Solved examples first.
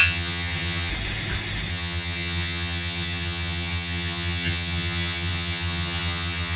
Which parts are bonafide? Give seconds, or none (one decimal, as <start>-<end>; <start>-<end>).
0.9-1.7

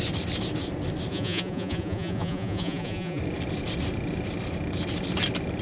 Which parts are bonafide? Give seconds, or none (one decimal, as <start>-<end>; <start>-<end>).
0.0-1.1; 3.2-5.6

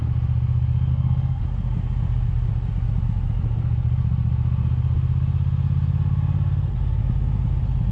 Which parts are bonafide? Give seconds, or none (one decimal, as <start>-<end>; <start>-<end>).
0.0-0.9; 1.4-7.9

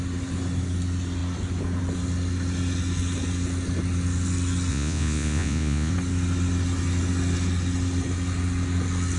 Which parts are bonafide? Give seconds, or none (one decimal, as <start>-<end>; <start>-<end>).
0.0-4.7; 5.9-9.2